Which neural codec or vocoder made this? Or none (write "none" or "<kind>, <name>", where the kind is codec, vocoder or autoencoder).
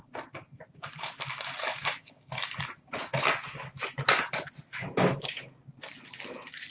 none